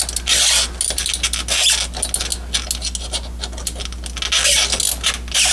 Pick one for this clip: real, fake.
real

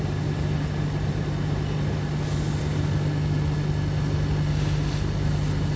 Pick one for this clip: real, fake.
real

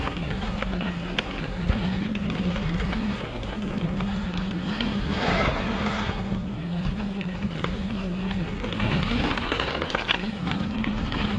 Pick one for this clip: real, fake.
fake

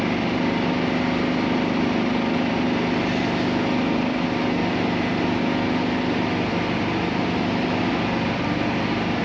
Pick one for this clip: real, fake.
real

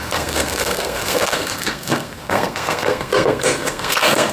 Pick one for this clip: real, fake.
fake